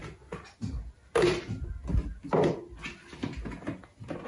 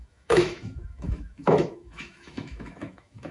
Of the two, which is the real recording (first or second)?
first